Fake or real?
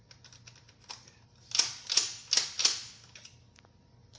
real